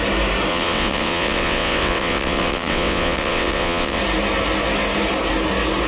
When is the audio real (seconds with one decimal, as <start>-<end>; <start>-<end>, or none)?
0.0-0.5; 4.0-5.9